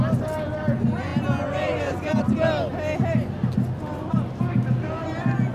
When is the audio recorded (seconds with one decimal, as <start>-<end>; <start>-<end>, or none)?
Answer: 0.0-5.5